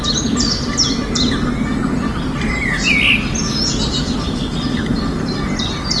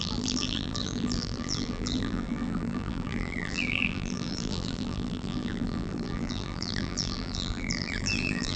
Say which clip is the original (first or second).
first